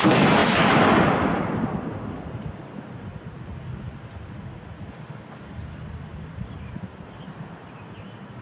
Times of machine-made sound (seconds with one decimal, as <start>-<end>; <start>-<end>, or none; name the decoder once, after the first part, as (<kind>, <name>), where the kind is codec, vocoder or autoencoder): 6.1-6.7 (vocoder, BigVGAN v2)